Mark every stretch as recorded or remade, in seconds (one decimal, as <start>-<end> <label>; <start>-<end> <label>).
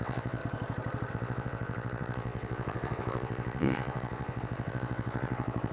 0.0-0.4 remade; 0.4-1.1 recorded; 1.1-5.7 remade